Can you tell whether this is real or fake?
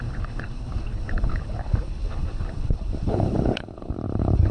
fake